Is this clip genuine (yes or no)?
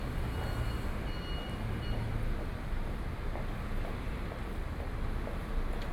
yes